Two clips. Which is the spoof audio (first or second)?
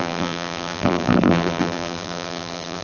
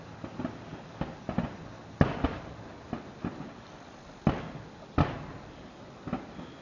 first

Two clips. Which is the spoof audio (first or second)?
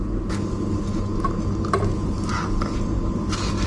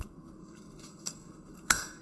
second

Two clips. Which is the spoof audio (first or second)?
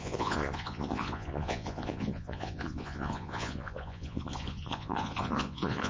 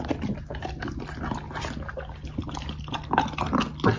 first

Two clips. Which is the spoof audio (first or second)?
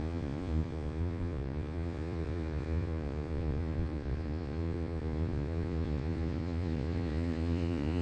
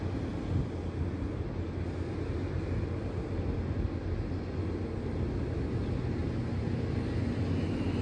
first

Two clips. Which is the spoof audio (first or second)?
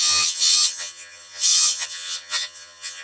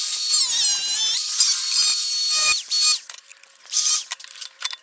first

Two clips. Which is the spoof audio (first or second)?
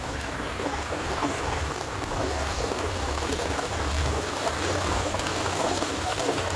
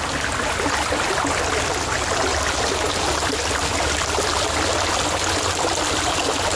first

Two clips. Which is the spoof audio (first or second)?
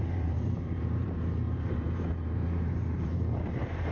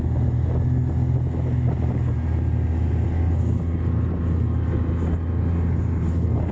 first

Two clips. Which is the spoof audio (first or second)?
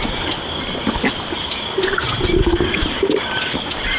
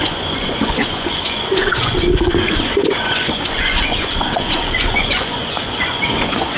second